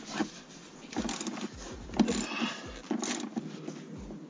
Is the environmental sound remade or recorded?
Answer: recorded